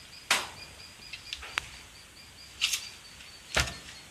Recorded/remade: recorded